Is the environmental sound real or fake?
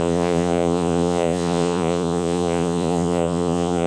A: fake